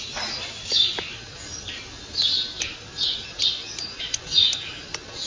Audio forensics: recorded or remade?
remade